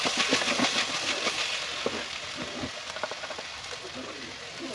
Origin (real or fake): real